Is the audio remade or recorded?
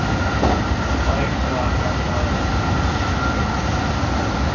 recorded